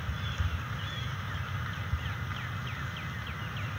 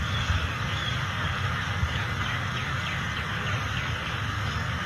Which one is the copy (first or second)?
second